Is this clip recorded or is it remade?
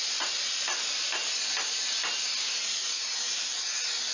recorded